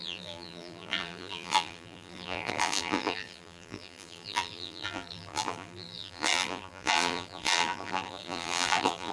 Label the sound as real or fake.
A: fake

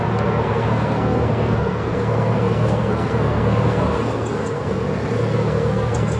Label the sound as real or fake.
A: fake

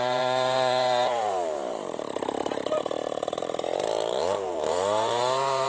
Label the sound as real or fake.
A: fake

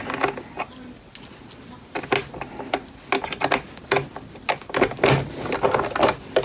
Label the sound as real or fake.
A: real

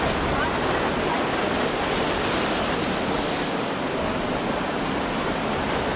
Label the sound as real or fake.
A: real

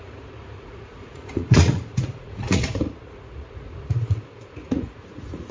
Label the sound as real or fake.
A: fake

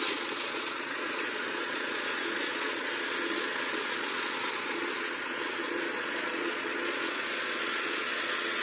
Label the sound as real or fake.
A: fake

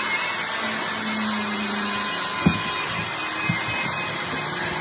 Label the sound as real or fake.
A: real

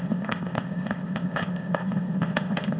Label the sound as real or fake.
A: fake